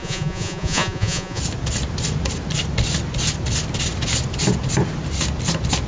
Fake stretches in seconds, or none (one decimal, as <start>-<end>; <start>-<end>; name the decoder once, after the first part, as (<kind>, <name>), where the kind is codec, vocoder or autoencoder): 0.0-1.4 (vocoder, Vocos)